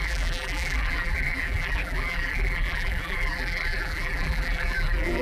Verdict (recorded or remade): remade